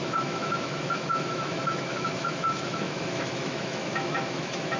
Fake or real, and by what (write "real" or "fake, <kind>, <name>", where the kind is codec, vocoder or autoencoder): fake, autoencoder, DAC-VAE